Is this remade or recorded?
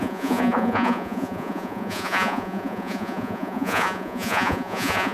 remade